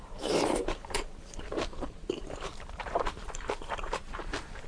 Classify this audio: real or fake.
fake